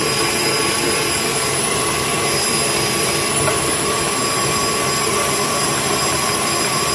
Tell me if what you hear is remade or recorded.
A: remade